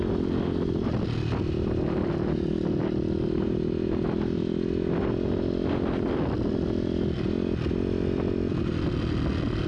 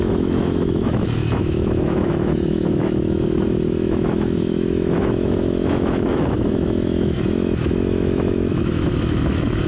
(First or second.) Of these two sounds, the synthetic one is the second